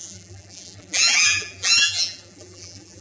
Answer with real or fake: fake